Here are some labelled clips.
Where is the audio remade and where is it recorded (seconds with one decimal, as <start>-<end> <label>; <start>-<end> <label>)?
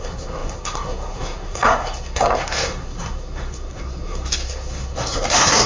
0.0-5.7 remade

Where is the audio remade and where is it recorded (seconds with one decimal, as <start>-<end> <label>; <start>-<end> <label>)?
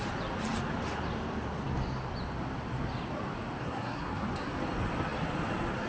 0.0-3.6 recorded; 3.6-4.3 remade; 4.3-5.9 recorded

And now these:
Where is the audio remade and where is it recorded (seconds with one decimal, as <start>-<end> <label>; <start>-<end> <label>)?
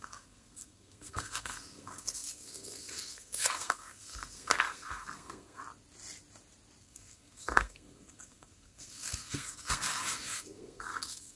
0.0-5.6 remade; 5.6-6.8 recorded; 6.8-11.4 remade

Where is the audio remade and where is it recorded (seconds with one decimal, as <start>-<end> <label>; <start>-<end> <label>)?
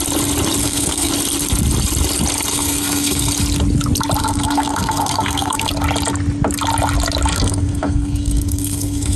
0.0-0.6 recorded; 0.6-1.1 remade; 1.1-2.5 recorded; 2.5-3.3 remade; 3.3-4.2 recorded; 4.2-5.7 remade; 5.7-7.3 recorded; 7.3-9.2 remade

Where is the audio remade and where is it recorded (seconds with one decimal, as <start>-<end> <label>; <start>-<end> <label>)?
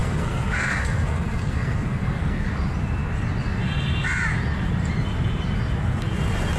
0.0-2.5 remade; 2.5-6.6 recorded